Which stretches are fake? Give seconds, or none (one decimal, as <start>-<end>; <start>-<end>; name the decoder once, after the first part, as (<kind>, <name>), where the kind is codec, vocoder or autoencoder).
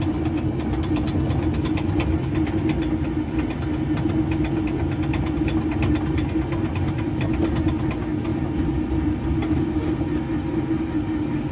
8.3-10.0 (vocoder, BigVGAN v2)